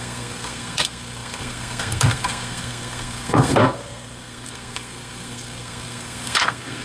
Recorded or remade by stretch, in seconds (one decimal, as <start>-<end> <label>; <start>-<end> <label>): 0.0-6.8 remade